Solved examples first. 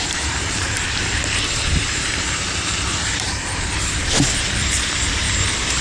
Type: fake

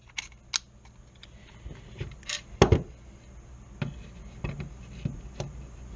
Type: real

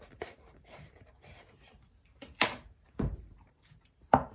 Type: fake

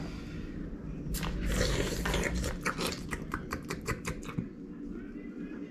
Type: fake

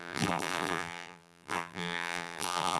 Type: fake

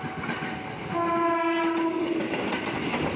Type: real